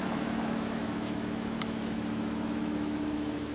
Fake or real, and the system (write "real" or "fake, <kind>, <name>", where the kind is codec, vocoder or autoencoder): fake, autoencoder, DAC-VAE